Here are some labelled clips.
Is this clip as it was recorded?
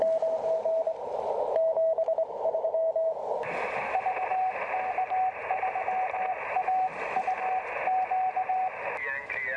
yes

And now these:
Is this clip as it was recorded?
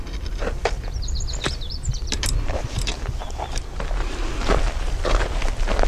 yes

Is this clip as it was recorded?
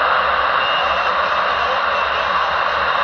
yes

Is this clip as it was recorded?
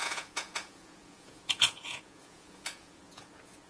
no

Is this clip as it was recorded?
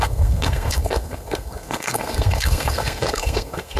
no